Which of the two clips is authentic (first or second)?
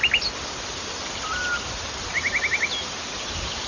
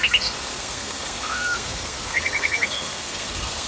first